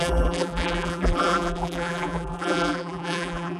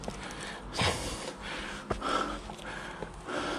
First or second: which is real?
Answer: second